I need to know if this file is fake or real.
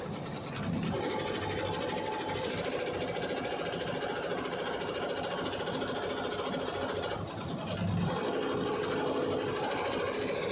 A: real